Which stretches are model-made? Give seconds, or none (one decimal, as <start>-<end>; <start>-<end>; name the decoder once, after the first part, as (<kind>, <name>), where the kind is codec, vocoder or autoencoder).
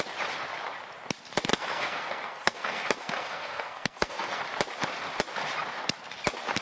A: 1.5-4.4 (codec, SNAC)